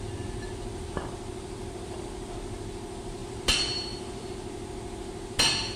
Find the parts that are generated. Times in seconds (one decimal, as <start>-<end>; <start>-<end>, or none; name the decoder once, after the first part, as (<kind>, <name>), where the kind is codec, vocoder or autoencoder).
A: 3.2-4.3 (vocoder, BigVGAN v2)